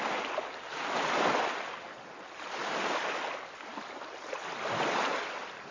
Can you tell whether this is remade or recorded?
recorded